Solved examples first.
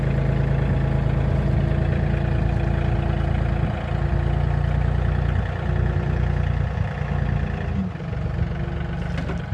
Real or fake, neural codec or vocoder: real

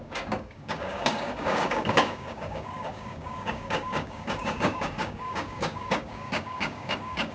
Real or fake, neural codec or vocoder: fake, codec, DAC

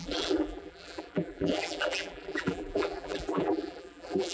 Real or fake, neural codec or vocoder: fake, vocoder, BigVGAN v2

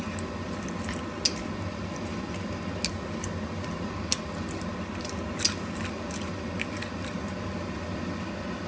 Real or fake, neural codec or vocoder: real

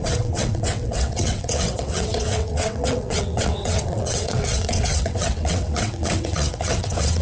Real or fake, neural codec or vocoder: fake, vocoder, WaveNeXt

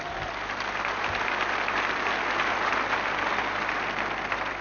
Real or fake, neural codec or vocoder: real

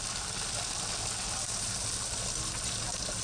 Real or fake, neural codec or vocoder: real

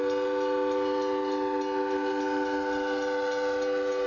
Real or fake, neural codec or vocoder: real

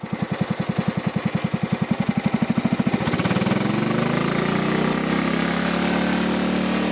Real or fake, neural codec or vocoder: real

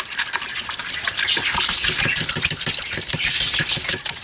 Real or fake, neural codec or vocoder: real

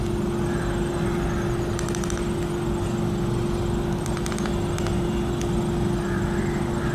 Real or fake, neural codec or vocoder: real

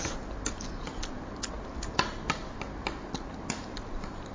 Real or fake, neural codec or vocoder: real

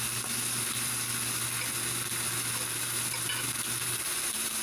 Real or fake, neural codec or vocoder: real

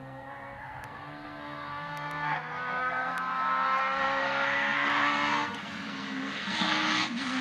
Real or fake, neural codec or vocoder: fake, codec, SNAC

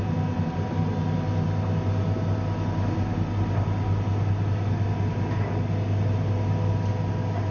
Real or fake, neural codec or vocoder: real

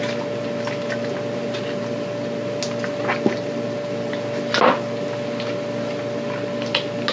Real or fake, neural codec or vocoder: real